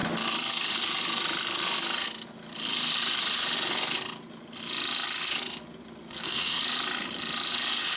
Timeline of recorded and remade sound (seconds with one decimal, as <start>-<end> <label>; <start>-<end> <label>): 0.0-6.0 recorded; 6.0-6.6 remade; 6.6-8.0 recorded